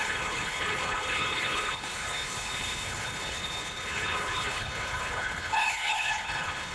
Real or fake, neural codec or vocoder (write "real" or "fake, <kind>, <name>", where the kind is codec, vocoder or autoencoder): fake, codec, HILCodec